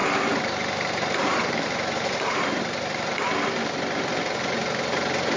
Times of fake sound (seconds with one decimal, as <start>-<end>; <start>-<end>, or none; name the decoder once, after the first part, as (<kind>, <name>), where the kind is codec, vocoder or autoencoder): 0.0-3.2 (vocoder, BigVGAN v2)